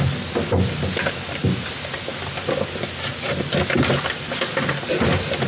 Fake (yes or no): no